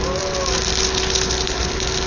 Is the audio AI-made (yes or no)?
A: no